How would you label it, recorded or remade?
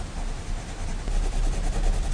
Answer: recorded